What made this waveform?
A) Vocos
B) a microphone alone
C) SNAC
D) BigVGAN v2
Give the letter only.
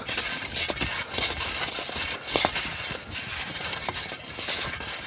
B